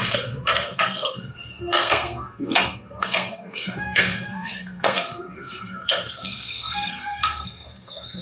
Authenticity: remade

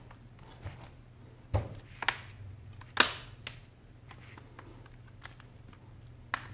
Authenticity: recorded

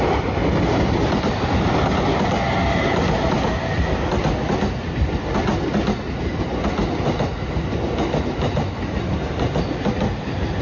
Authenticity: recorded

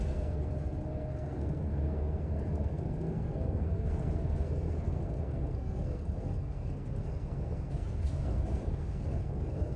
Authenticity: remade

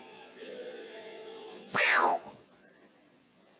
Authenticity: remade